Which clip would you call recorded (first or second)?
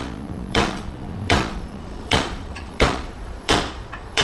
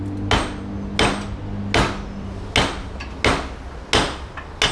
second